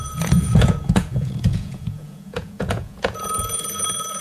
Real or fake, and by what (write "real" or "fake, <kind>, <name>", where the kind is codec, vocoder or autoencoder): fake, vocoder, Vocos